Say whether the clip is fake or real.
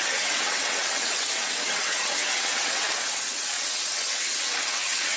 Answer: fake